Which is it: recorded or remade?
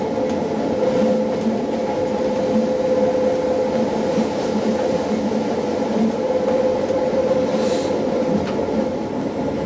recorded